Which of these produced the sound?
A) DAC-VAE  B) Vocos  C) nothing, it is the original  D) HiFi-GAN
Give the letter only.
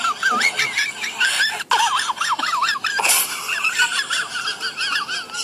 C